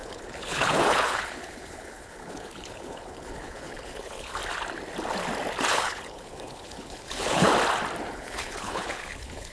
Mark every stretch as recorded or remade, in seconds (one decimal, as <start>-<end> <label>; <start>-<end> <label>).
0.0-4.4 remade; 4.4-5.7 recorded; 5.7-7.5 remade; 7.5-8.1 recorded; 8.1-9.5 remade